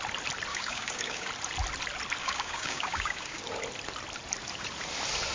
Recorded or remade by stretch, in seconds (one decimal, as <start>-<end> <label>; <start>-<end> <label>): 0.0-0.5 recorded; 0.5-1.3 remade; 1.3-2.2 recorded; 2.2-3.4 remade; 3.4-5.3 recorded